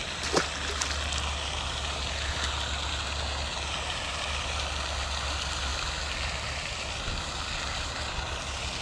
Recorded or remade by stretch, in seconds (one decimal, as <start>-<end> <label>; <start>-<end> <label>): 0.0-8.8 recorded